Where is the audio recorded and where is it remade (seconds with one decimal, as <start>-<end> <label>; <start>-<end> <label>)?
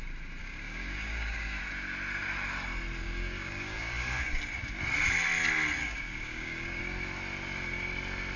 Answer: 0.0-0.4 recorded; 0.4-1.6 remade; 1.6-3.0 recorded; 3.0-4.4 remade; 4.4-5.8 recorded; 5.8-6.8 remade; 6.8-8.4 recorded